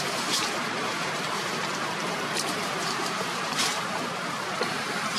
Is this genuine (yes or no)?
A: no